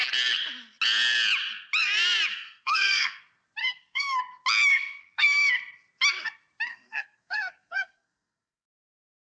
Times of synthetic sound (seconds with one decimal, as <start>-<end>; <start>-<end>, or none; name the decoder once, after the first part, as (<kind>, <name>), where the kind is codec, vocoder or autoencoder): 2.3-3.2 (codec, SNAC); 3.6-4.2; 4.7-5.5; 6.7-9.3